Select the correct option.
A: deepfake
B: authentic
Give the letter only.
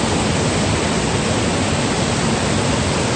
B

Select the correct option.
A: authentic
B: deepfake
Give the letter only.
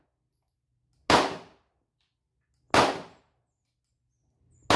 A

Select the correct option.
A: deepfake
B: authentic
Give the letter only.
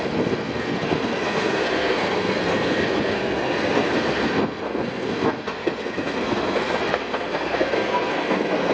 A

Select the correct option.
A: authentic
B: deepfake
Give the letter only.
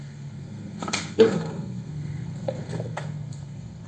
B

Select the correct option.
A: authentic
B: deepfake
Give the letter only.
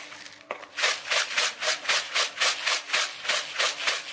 A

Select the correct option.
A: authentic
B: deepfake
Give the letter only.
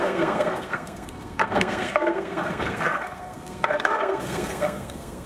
B